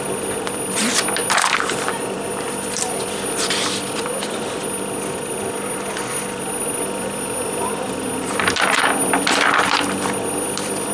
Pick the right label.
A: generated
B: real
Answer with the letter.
A